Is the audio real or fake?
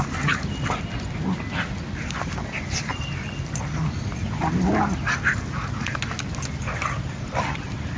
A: real